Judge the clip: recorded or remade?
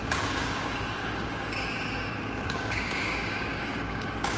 remade